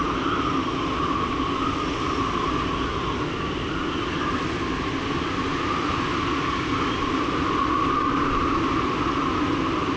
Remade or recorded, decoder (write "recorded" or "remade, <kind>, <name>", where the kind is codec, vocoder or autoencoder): recorded